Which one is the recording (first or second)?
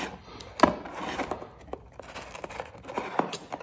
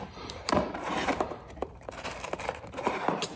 first